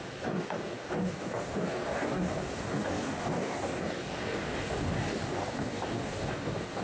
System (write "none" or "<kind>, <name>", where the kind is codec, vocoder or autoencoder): codec, DAC